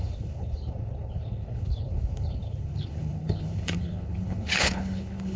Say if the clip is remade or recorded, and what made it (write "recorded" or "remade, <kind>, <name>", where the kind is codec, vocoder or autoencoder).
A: remade, codec, HILCodec